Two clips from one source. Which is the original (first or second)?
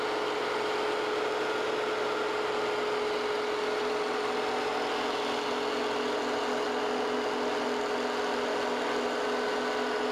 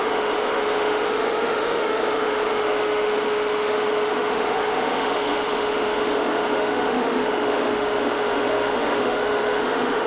first